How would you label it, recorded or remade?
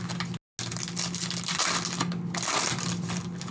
recorded